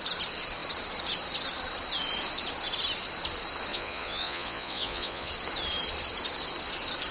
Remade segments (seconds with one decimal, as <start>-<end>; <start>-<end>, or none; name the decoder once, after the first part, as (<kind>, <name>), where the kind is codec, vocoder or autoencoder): 3.7-5.3 (vocoder, Vocos)